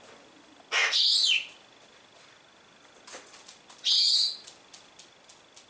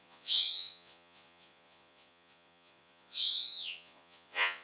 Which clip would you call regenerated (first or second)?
second